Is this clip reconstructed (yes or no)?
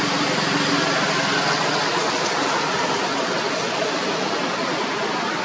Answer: no